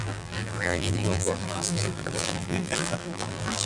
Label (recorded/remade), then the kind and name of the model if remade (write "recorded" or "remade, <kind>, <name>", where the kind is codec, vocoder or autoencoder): remade, vocoder, BigVGAN v2